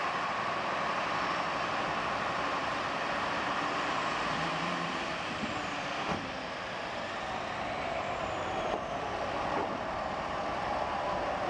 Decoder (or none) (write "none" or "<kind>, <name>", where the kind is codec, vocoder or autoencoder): vocoder, BigVGAN v2